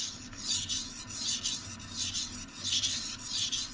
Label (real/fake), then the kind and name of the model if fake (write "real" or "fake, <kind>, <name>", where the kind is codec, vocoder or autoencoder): real